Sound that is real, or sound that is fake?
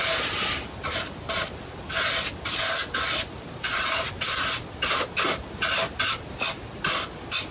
real